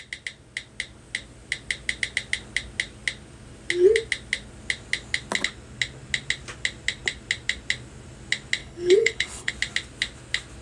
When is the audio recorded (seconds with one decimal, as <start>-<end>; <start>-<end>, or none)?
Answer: 0.0-8.6; 9.5-10.6